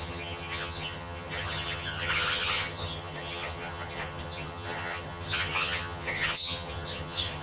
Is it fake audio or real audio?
fake